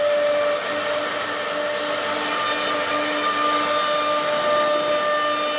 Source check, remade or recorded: recorded